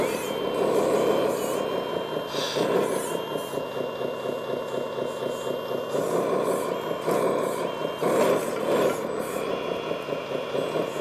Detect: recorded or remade recorded